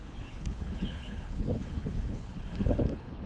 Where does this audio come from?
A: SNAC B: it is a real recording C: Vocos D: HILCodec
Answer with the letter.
D